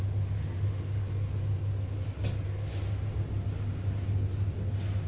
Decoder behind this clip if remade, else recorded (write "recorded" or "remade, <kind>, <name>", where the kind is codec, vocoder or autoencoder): recorded